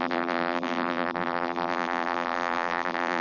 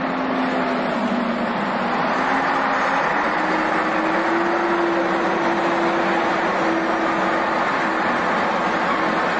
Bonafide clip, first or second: second